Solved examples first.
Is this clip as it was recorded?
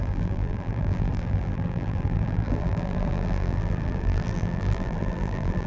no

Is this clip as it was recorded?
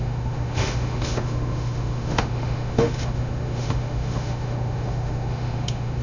no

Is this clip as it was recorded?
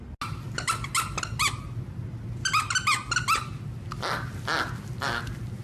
yes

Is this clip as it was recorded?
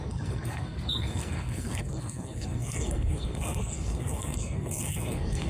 no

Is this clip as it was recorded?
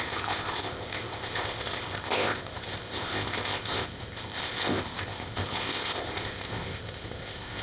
no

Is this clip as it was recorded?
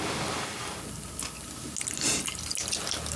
yes